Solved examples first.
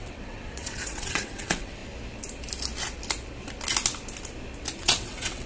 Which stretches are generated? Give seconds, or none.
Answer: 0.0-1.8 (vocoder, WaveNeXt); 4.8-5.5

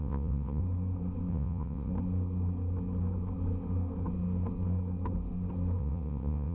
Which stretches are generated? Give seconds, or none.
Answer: 0.0-0.6 (vocoder, WaveNeXt); 1.3-1.9; 5.8-6.5

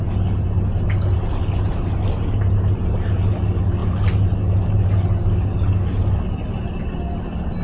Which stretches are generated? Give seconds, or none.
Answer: none